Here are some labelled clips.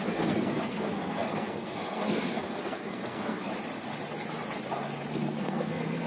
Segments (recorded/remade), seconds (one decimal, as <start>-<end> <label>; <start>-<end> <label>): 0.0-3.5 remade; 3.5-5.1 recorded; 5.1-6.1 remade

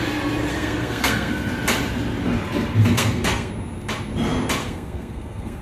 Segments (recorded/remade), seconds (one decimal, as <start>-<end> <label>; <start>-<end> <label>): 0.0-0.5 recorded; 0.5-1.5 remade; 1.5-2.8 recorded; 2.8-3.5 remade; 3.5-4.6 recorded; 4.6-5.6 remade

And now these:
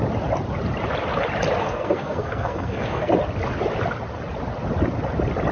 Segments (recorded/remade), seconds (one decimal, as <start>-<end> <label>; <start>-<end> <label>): 0.0-1.6 recorded; 1.6-3.1 remade; 3.1-5.5 recorded

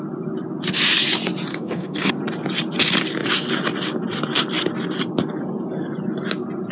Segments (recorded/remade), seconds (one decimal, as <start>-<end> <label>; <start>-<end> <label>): 0.0-1.5 recorded; 1.5-2.1 remade; 2.1-6.7 recorded

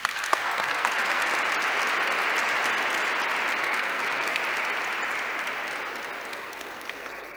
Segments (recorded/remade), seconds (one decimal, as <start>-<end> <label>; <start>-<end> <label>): 0.0-1.3 remade; 1.3-3.6 recorded; 3.6-4.4 remade; 4.4-6.3 recorded; 6.3-7.4 remade